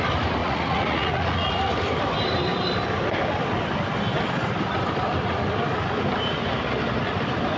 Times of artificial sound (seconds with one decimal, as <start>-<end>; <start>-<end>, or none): 0.4-1.5